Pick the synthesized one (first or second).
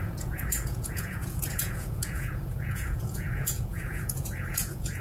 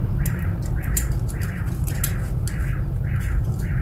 first